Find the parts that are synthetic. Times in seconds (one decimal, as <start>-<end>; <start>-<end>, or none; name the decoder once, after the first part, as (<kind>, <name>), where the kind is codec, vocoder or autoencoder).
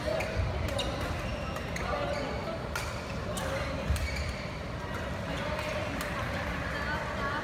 none